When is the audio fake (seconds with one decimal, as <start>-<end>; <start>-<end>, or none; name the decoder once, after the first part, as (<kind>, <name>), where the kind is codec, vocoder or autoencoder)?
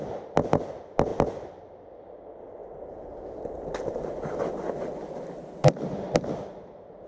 none